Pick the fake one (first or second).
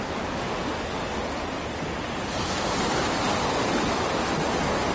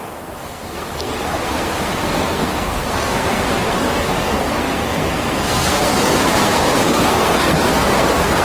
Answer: second